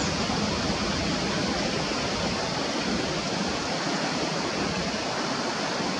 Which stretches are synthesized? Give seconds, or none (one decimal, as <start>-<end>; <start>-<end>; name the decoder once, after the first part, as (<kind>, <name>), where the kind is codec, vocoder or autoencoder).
none